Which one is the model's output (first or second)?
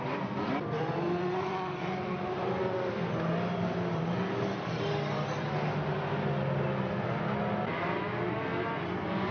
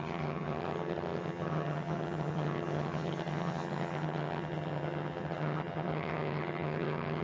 second